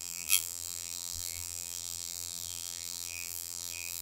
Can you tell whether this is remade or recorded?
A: remade